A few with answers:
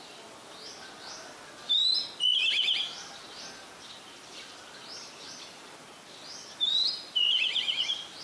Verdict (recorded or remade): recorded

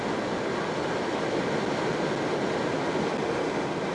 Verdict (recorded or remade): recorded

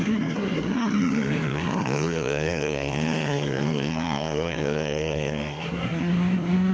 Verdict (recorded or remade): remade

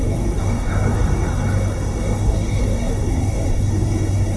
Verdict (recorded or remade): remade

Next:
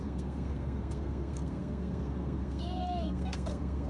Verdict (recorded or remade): remade